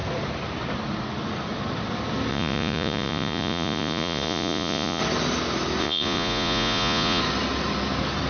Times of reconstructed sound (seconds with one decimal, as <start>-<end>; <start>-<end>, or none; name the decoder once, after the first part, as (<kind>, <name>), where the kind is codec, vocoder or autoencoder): 2.3-5.0 (vocoder, Vocos); 5.8-7.2